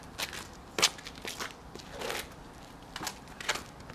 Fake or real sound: real